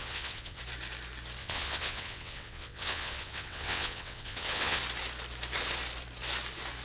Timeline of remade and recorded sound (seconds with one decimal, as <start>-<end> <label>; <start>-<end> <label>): 0.0-0.6 remade; 0.6-1.4 recorded; 1.4-4.8 remade; 4.8-6.8 recorded